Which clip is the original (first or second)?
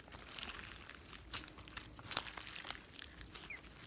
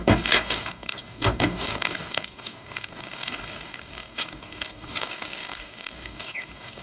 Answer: first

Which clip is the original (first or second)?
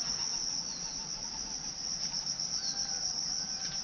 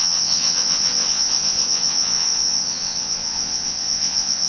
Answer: first